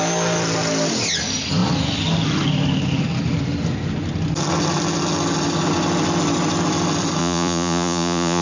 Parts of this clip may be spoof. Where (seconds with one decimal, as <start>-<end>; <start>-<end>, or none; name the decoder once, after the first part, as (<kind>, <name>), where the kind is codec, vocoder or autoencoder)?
7.2-8.4 (vocoder, Vocos)